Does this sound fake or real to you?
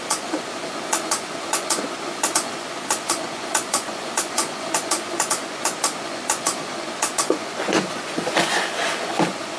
fake